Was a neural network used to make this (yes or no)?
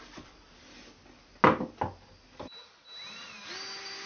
no